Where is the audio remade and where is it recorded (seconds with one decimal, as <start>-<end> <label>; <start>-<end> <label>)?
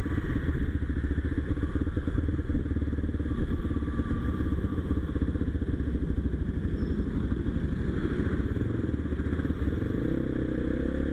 0.0-1.7 recorded; 1.7-2.3 remade; 2.3-4.7 recorded; 4.7-5.7 remade; 5.7-11.1 recorded